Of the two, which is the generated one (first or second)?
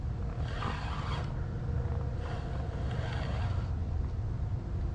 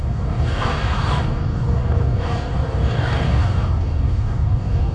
second